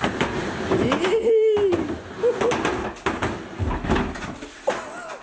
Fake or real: real